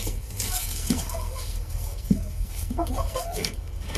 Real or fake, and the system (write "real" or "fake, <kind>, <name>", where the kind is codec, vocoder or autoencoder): fake, codec, SNAC